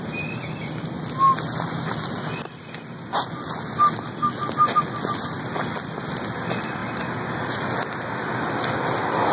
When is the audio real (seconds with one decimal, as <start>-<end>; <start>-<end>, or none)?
0.0-9.3